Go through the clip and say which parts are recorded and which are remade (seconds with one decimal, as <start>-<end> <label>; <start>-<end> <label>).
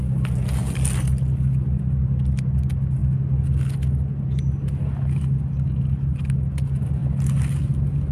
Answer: 0.0-8.1 recorded